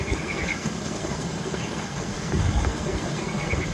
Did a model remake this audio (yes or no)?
yes